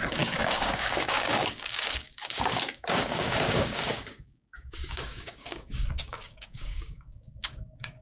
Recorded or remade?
remade